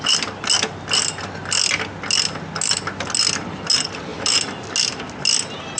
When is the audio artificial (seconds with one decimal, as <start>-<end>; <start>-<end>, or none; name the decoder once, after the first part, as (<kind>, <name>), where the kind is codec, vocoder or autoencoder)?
none